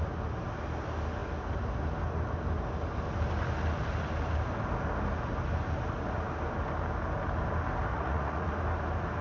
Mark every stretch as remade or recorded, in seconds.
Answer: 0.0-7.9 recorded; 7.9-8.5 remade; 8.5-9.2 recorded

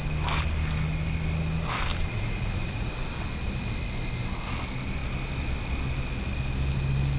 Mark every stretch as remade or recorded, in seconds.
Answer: 0.0-2.1 recorded; 2.1-2.9 remade; 2.9-7.2 recorded